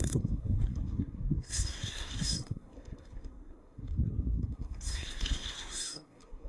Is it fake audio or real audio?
fake